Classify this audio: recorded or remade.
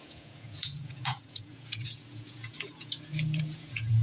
remade